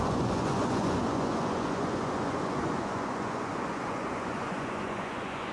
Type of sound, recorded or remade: remade